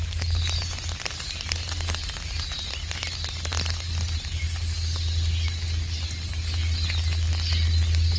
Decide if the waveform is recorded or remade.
recorded